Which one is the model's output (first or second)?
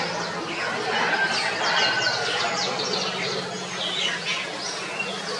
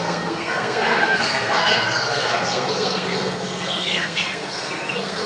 second